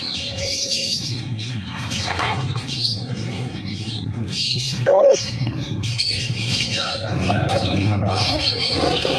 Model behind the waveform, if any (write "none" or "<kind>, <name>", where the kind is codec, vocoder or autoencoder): codec, SNAC